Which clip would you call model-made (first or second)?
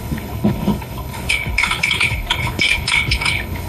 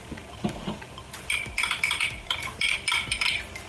first